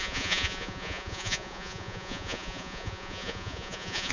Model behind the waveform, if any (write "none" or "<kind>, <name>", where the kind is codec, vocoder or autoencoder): vocoder, Vocos